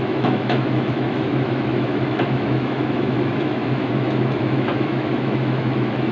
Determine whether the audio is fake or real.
fake